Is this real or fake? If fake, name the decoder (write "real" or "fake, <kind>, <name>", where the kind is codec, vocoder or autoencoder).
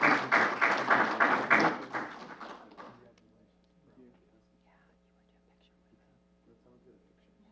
real